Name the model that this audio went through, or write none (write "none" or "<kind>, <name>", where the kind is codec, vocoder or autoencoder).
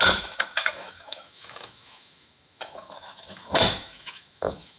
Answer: autoencoder, DAC-VAE